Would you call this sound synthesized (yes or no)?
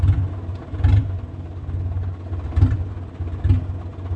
no